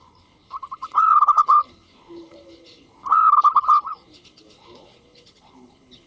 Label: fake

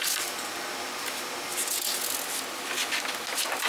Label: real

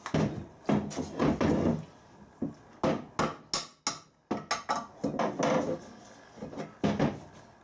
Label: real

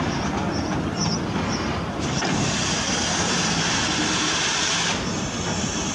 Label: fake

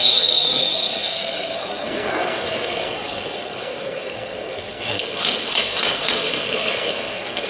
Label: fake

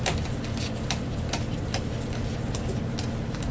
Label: real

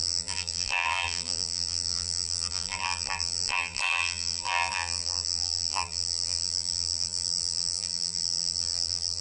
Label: fake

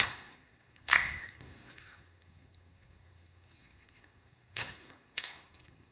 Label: fake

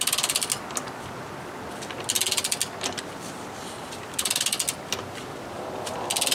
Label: real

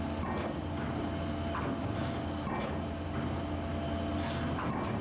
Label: real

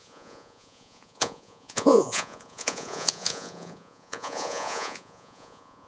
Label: fake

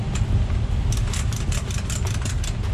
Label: real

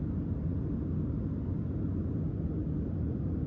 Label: real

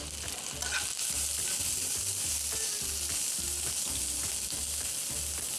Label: real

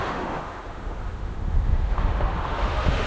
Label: fake